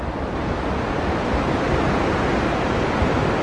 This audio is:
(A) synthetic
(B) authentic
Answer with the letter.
B